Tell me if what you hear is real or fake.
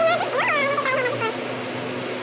real